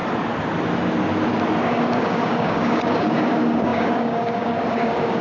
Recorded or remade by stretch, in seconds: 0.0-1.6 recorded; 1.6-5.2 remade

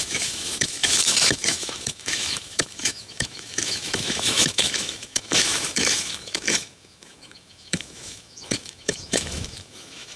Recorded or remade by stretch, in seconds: 0.0-10.2 remade

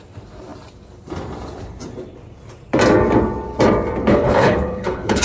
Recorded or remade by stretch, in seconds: 0.0-4.1 recorded; 4.1-5.2 remade

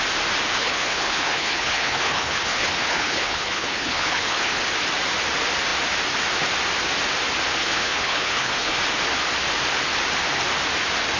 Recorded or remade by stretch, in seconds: 0.0-0.5 recorded; 0.5-4.6 remade; 4.6-7.6 recorded; 7.6-8.8 remade; 8.8-11.2 recorded

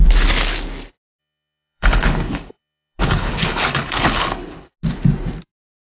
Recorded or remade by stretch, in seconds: 0.0-1.2 recorded; 1.2-4.7 remade; 4.7-5.9 recorded

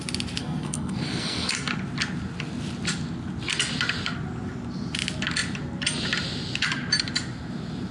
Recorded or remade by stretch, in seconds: 0.0-0.4 recorded; 0.4-1.7 remade; 1.7-7.9 recorded